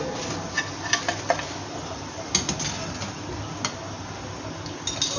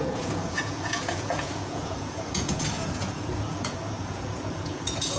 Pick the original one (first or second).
first